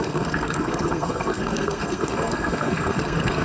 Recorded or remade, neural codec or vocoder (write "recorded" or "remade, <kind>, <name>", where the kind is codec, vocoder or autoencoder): remade, codec, SNAC